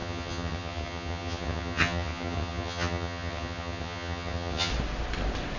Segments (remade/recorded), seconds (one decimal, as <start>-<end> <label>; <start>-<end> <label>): 0.0-4.7 remade; 4.7-5.6 recorded